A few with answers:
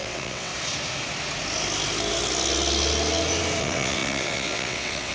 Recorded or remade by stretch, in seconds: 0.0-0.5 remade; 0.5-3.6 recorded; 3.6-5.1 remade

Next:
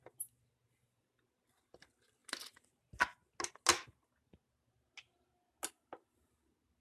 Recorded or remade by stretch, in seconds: 0.0-6.8 recorded

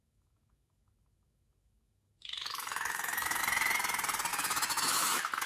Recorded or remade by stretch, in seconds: 0.0-3.4 remade; 3.4-4.3 recorded; 4.3-5.5 remade

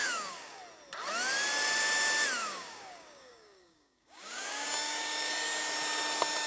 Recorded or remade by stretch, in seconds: 0.0-0.6 remade; 0.6-2.4 recorded; 2.4-5.3 remade; 5.3-6.5 recorded

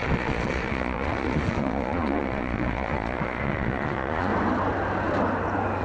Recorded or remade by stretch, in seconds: 0.0-4.3 remade; 4.3-5.8 recorded